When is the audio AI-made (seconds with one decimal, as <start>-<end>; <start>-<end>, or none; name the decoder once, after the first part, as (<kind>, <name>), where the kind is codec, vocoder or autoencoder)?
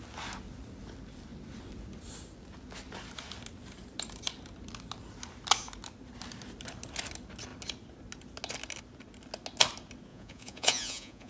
10.1-11.3 (vocoder, Vocos)